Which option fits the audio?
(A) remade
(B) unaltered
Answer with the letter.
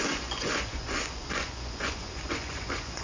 A